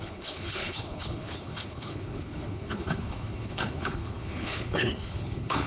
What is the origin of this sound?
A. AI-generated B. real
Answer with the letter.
A